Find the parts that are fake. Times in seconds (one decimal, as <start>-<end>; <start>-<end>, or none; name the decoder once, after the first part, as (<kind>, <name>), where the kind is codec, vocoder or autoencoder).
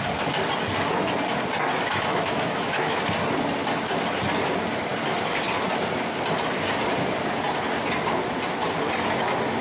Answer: 1.9-3.0 (autoencoder, DAC-VAE)